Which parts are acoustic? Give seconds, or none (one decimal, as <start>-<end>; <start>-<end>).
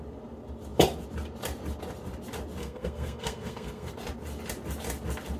0.0-2.6; 3.9-5.4